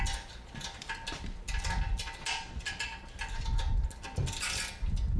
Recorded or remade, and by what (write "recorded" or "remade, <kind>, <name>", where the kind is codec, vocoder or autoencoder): recorded